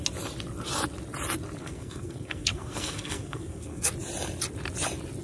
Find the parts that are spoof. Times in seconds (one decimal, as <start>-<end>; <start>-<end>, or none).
1.6-3.9